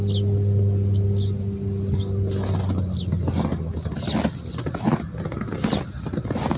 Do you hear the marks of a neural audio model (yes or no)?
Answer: no